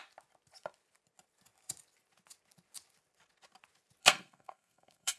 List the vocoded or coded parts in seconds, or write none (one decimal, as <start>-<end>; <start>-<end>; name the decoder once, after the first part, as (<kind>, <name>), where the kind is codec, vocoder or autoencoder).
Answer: 4.0-5.2 (codec, SNAC)